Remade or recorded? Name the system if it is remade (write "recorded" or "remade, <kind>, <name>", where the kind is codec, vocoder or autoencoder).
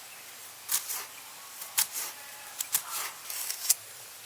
remade, vocoder, BigVGAN v2